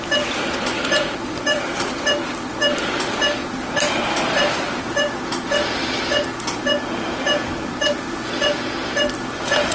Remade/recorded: remade